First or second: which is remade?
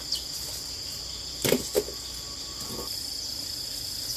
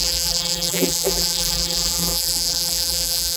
second